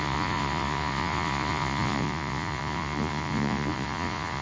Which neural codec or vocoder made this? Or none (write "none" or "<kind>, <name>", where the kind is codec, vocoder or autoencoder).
vocoder, Vocos